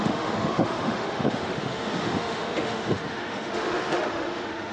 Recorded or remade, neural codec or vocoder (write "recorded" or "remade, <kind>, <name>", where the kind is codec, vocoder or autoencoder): remade, autoencoder, DAC-VAE